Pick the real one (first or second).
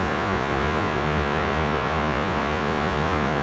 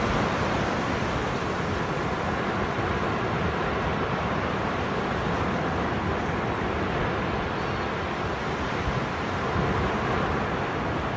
second